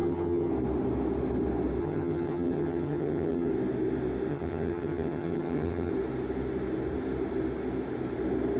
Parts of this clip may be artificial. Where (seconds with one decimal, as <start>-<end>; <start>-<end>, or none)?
0.0-0.5; 1.8-3.5; 4.3-5.9